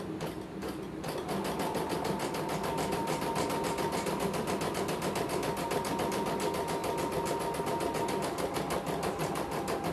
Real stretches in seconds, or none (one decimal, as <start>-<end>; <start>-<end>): 0.0-9.9